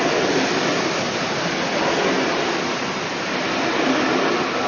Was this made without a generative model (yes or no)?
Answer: yes